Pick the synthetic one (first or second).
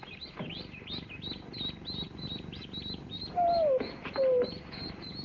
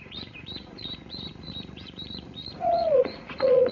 second